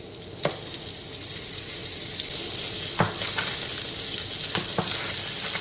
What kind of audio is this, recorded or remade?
recorded